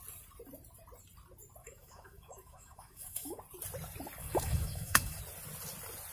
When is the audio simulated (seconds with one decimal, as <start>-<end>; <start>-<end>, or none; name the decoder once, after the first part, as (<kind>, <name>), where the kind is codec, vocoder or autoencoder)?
1.6-3.4 (autoencoder, DAC-VAE); 4.2-5.2

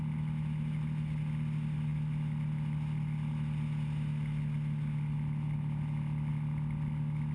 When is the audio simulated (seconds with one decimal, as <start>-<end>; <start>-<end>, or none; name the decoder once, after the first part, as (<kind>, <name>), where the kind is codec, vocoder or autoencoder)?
none